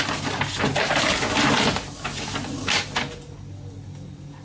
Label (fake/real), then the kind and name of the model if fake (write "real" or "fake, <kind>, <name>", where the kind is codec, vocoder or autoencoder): real